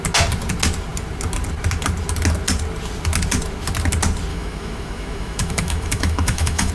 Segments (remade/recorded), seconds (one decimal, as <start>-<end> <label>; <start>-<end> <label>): 0.0-4.3 recorded; 4.3-6.7 remade